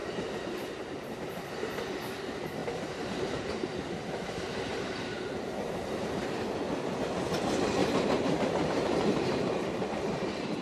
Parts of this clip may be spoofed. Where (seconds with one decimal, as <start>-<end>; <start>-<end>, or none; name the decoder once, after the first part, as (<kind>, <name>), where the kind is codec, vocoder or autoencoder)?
0.0-1.5 (vocoder, BigVGAN v2); 2.6-6.3; 7.8-10.6